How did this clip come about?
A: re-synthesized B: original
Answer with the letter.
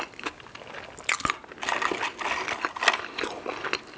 B